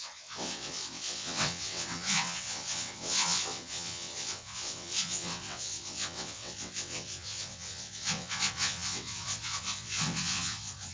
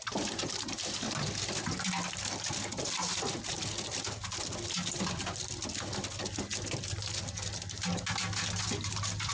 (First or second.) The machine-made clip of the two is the first